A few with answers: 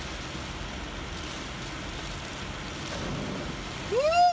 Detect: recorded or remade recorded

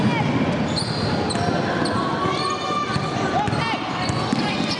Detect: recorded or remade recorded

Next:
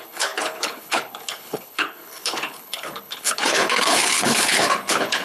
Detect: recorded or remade remade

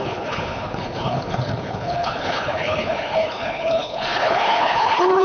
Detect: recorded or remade remade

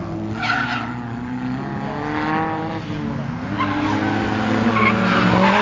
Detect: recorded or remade recorded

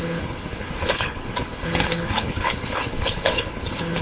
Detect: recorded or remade remade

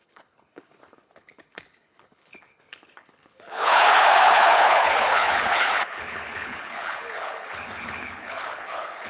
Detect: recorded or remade remade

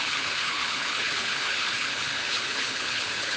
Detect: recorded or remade remade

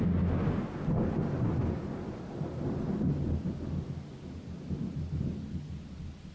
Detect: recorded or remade recorded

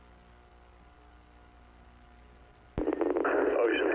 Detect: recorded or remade recorded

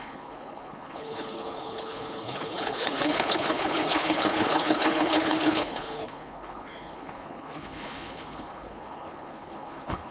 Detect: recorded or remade remade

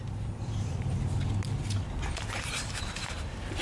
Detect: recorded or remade recorded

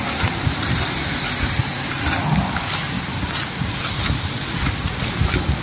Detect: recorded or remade recorded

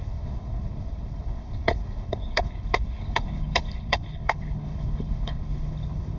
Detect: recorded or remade remade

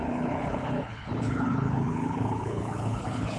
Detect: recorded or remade remade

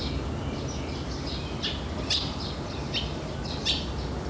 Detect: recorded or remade recorded